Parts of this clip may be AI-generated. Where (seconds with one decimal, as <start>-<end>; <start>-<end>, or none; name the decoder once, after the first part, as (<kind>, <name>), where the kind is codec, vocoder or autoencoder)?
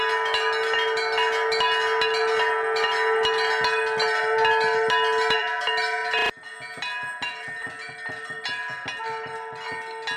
none